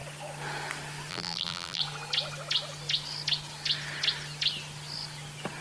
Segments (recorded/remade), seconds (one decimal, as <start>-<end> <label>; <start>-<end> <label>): 0.0-1.1 recorded; 1.1-1.8 remade; 1.8-5.6 recorded